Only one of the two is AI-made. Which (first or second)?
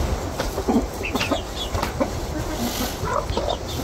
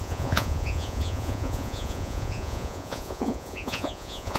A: second